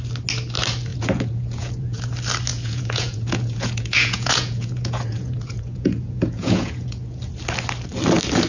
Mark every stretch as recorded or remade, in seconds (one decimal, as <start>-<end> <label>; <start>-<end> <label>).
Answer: 0.0-0.9 recorded; 0.9-2.0 remade; 2.0-2.5 recorded; 2.5-7.2 remade; 7.2-8.5 recorded